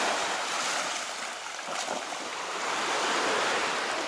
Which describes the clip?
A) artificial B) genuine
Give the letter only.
B